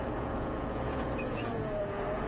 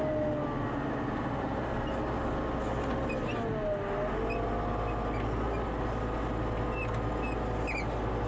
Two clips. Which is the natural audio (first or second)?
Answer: second